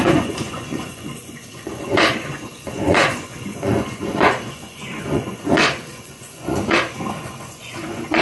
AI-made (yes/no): yes